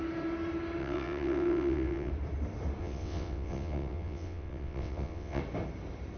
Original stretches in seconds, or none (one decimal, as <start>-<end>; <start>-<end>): 0.0-0.8; 2.1-2.8; 5.4-6.2